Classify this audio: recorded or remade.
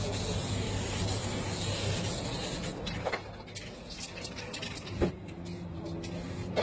recorded